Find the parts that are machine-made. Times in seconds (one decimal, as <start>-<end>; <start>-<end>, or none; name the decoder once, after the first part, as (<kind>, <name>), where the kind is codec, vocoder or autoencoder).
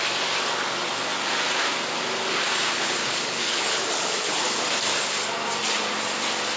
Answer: 2.7-4.6 (codec, HILCodec)